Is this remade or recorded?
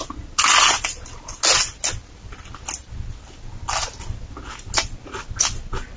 recorded